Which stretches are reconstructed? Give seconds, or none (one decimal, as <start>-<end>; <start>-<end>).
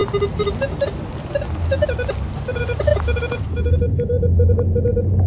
2.5-2.9